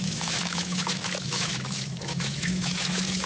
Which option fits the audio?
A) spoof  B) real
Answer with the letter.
A